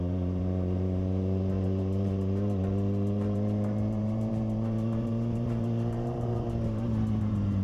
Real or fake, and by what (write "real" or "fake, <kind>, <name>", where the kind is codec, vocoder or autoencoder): fake, vocoder, BigVGAN v2